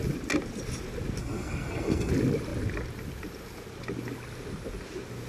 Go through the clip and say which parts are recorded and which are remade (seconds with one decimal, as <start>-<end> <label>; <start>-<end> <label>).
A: 0.0-1.2 recorded; 1.2-2.1 remade; 2.1-5.3 recorded

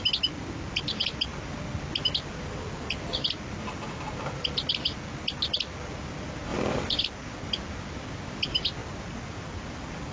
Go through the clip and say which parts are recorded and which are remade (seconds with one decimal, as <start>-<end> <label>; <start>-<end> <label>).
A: 0.0-10.1 recorded